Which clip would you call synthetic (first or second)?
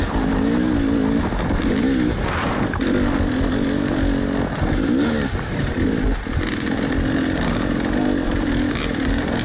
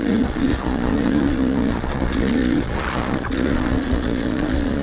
second